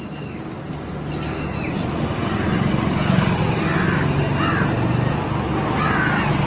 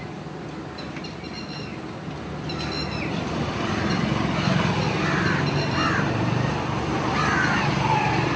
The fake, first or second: second